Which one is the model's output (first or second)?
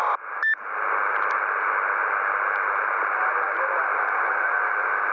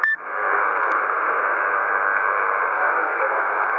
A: second